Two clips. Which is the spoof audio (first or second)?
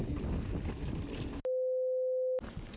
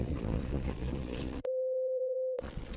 second